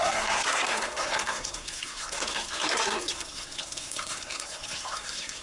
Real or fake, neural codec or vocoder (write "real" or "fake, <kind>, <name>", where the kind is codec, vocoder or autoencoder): fake, codec, SNAC